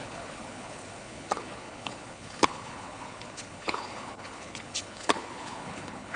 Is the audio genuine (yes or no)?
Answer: no